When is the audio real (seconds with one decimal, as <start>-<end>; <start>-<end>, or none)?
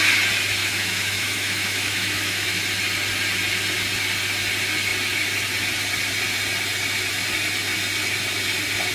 0.0-0.6; 2.6-8.9